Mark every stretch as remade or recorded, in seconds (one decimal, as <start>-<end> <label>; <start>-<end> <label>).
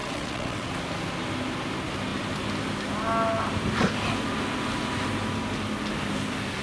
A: 0.0-0.7 remade; 0.7-6.6 recorded